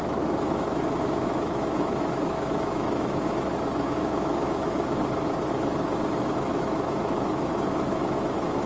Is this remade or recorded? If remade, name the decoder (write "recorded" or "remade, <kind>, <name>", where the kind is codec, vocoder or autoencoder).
remade, autoencoder, DAC-VAE